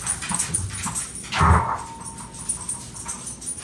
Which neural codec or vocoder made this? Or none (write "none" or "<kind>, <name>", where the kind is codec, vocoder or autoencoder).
none